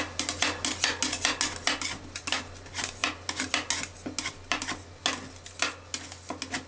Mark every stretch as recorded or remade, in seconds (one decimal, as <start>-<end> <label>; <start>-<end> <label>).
0.0-6.7 recorded